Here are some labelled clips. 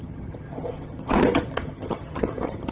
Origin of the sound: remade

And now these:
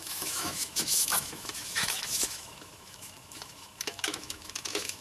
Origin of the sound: remade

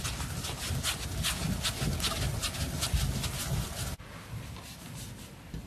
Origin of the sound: recorded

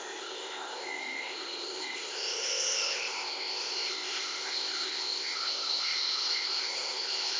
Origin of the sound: remade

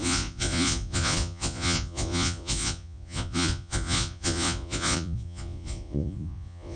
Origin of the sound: remade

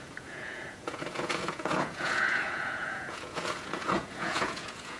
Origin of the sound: remade